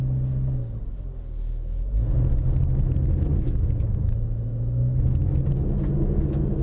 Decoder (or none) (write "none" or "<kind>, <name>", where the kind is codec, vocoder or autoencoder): none